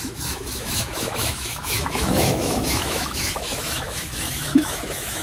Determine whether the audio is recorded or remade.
remade